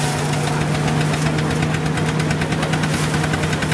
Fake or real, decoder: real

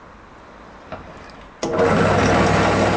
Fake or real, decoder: real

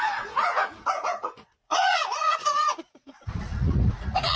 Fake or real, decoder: fake, vocoder, Vocos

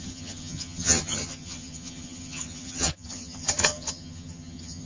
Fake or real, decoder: fake, vocoder, HiFi-GAN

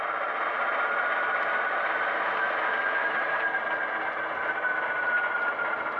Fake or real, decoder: real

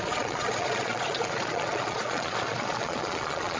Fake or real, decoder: fake, vocoder, Vocos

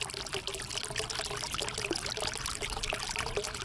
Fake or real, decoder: real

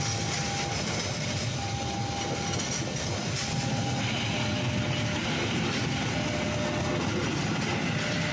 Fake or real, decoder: real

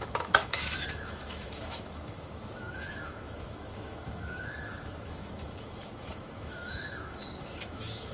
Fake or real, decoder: fake, autoencoder, DAC-VAE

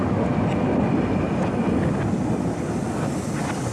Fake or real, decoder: real